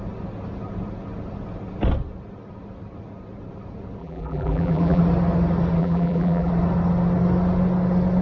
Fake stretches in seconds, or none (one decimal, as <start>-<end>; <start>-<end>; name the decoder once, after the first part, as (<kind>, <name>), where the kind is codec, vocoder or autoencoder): 4.0-5.0 (vocoder, BigVGAN v2); 5.8-6.5